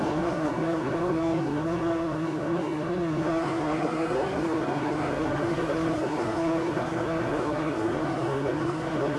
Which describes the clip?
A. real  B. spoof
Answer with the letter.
B